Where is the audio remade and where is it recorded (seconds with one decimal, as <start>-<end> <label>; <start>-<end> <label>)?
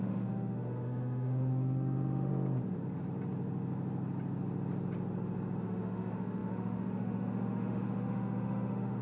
0.0-2.3 remade; 2.3-5.6 recorded; 5.6-9.0 remade